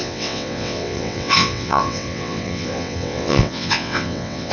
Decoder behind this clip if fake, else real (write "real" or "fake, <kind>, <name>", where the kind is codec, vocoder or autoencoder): fake, vocoder, WaveNeXt